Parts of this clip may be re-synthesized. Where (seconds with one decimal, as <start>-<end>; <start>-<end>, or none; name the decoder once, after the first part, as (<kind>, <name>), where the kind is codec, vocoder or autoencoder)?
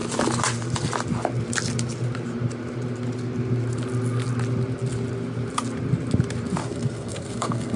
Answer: 6.6-7.8 (codec, SNAC)